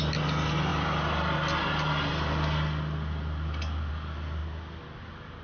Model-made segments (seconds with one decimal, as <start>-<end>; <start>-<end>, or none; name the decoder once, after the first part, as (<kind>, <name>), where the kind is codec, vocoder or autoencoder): none